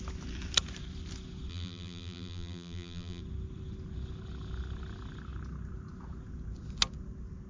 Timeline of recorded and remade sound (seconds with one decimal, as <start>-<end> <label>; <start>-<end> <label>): 0.0-1.5 recorded; 1.5-3.2 remade; 3.2-7.5 recorded